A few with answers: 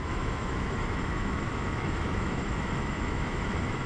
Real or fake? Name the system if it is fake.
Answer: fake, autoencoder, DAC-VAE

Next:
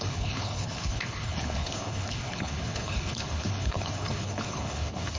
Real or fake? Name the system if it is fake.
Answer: fake, codec, HILCodec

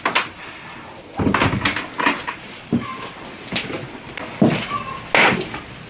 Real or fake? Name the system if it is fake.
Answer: real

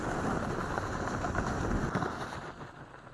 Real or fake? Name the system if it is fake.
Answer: real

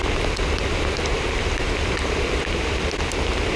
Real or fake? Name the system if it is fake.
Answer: real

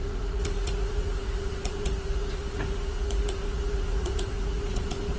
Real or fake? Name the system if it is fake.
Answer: fake, vocoder, Vocos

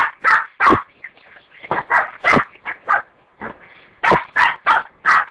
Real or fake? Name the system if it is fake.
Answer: real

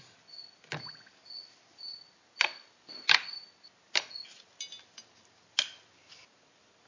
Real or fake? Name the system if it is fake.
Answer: real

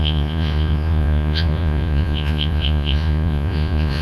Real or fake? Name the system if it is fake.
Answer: fake, vocoder, Vocos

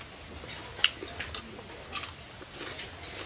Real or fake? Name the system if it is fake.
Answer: real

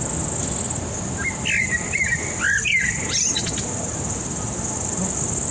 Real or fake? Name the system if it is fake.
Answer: real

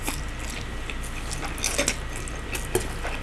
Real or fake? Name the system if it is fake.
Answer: real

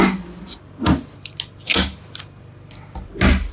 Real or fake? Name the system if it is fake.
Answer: real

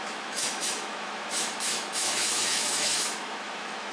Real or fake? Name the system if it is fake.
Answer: fake, autoencoder, DAC-VAE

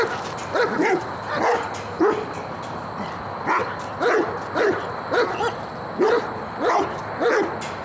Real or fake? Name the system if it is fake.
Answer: real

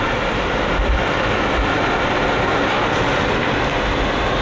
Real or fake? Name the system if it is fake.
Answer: real